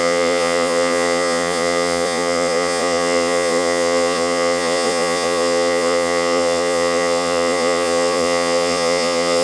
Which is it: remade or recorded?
remade